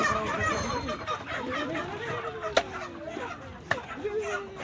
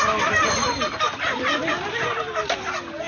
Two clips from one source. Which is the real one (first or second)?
first